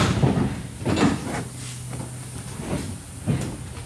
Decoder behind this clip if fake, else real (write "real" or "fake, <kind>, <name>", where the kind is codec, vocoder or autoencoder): real